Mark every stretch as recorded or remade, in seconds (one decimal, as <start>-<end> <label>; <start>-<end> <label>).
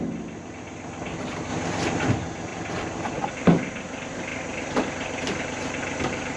0.0-1.5 recorded; 1.5-2.1 remade; 2.1-2.5 recorded; 2.5-3.3 remade; 3.3-4.3 recorded; 4.3-6.4 remade